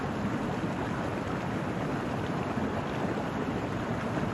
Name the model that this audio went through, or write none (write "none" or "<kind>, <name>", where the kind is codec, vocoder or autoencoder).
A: none